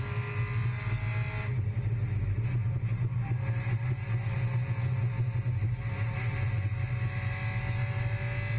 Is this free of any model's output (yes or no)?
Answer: yes